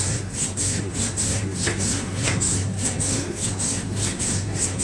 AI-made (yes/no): yes